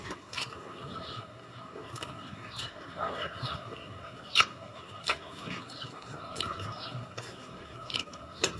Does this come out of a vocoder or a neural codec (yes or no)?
yes